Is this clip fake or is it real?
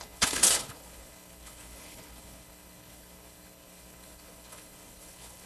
fake